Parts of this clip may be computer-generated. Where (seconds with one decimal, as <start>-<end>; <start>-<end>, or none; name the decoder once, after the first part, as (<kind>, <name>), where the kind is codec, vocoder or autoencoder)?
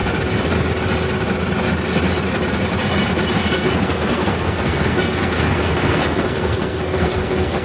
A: 3.4-7.6 (codec, SNAC)